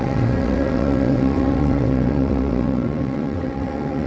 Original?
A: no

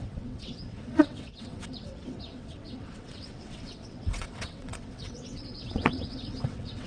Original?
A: no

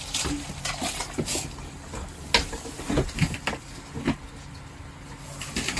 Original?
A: yes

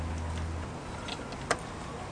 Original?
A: yes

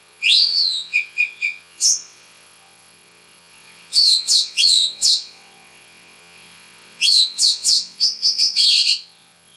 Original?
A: no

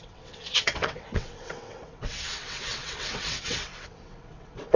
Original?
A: no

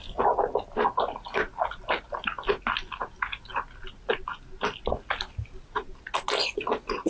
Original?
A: yes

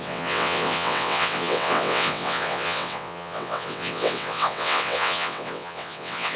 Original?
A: no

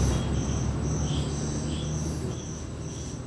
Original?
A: yes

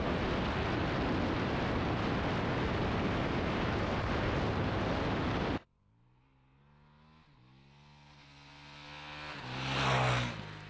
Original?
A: yes